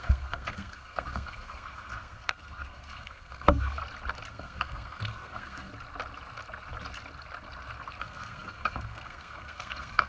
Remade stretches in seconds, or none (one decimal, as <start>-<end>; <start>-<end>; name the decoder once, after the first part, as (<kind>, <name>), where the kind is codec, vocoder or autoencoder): 0.0-3.8 (codec, SNAC); 4.3-5.7; 8.0-10.1